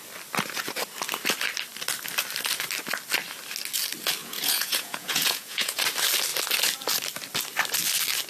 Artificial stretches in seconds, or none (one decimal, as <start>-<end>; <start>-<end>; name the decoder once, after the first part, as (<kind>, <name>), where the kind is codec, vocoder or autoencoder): 4.2-5.8 (vocoder, Vocos)